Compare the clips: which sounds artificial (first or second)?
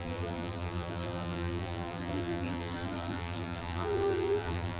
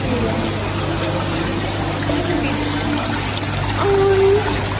first